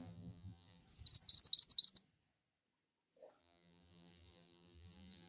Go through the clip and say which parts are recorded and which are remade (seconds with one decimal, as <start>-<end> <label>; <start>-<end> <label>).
0.0-0.8 remade; 0.8-3.4 recorded; 3.4-5.3 remade